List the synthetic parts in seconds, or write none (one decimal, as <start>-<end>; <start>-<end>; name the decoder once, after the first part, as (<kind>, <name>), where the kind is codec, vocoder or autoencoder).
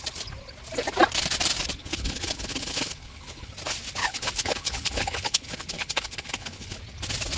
1.8-3.5 (codec, HILCodec); 4.0-6.8